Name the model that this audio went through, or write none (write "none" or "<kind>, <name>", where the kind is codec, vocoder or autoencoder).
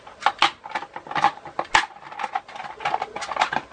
none